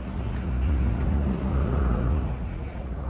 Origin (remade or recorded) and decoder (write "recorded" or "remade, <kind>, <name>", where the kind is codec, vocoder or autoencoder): remade, vocoder, Vocos